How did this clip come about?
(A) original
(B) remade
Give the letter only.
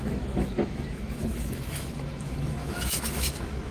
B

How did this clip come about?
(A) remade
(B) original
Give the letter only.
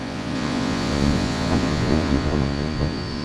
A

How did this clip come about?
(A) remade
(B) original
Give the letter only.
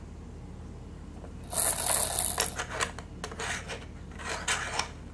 B